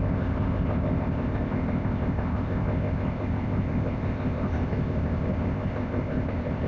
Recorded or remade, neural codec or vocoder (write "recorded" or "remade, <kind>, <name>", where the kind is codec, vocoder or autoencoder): remade, codec, ZipCodec